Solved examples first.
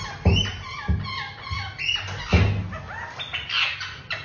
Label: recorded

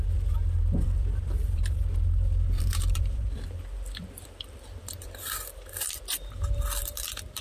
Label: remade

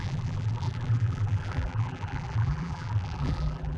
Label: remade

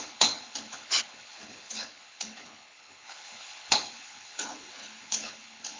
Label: remade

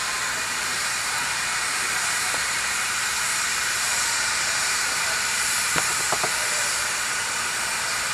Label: remade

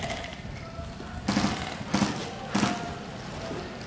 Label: recorded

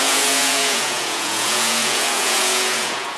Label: remade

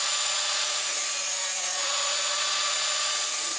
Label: remade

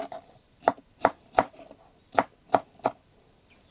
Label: recorded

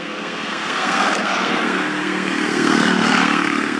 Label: remade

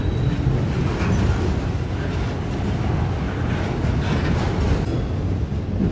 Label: recorded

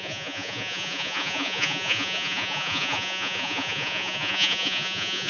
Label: remade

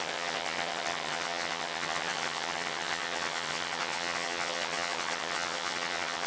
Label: remade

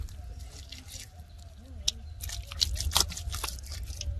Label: recorded